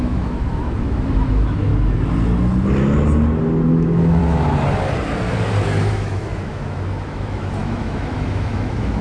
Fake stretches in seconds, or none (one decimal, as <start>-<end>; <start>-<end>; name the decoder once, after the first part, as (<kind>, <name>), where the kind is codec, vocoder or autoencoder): 0.0-1.7 (autoencoder, DAC-VAE); 3.7-4.2; 5.9-9.0